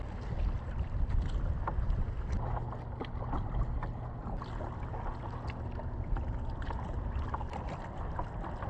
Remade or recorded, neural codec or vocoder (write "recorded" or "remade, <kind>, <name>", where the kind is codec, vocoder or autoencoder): recorded